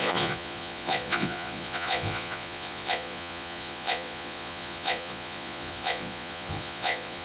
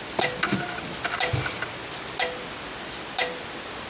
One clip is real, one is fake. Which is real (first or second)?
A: second